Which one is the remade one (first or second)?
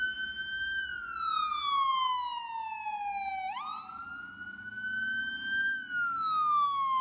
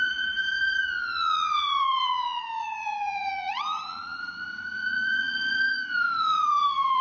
second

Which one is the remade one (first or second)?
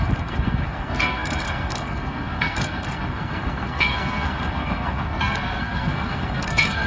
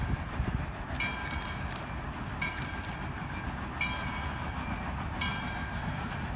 first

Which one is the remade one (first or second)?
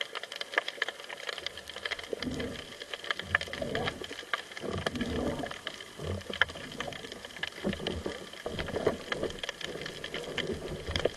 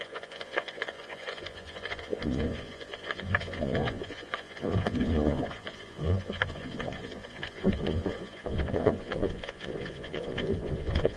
second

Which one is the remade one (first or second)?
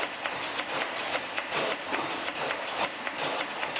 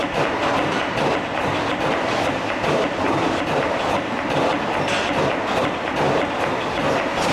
first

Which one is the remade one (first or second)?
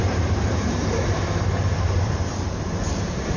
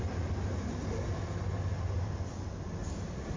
first